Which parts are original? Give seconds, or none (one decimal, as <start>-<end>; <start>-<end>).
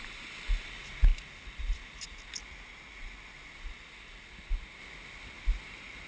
0.0-6.1